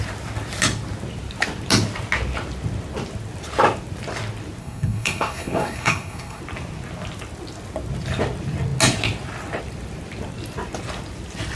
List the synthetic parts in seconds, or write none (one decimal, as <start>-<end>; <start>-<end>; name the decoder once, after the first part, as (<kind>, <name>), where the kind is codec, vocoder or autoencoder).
4.6-6.4 (codec, SNAC)

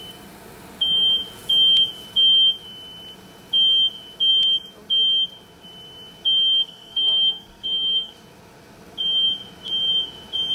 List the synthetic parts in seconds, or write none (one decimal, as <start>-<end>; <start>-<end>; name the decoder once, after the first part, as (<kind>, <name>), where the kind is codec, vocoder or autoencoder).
6.6-8.1 (codec, SNAC)

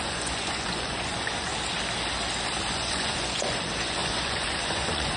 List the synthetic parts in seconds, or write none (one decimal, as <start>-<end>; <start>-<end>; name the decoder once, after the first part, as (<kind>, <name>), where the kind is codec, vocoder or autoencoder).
0.0-1.5 (vocoder, Vocos); 2.7-5.2